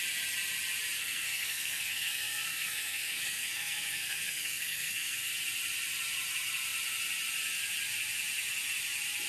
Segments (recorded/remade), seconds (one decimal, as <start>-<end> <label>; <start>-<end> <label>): 0.0-1.0 recorded; 1.0-5.3 remade; 5.3-9.3 recorded